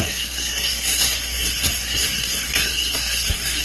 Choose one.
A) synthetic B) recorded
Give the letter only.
A